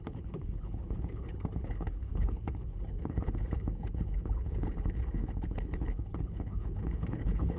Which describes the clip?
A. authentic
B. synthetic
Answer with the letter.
B